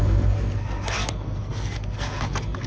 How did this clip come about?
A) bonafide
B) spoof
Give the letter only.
B